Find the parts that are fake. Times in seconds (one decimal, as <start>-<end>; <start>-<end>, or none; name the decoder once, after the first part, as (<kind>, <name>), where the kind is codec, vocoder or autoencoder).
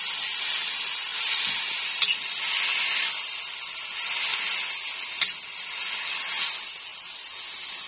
none